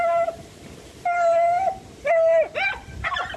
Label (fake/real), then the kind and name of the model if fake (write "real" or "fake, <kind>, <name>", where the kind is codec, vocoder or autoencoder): real